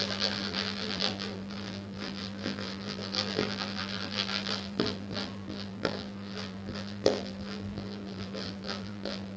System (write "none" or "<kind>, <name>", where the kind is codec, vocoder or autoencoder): vocoder, BigVGAN v2